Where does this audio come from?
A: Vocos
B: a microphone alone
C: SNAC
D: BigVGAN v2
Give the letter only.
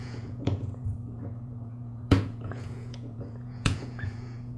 A